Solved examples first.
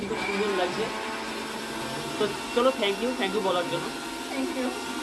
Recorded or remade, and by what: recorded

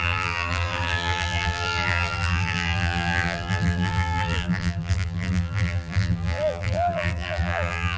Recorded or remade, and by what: remade, vocoder, BigVGAN v2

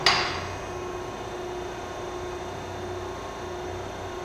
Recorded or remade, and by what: recorded